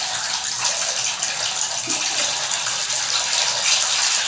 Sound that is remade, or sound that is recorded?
recorded